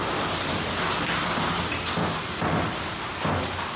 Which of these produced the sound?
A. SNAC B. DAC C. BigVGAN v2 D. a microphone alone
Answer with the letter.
D